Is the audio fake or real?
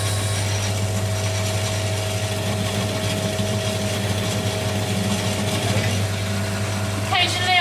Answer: real